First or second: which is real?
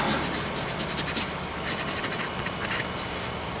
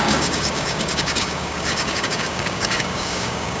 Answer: first